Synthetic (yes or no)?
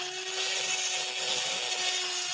no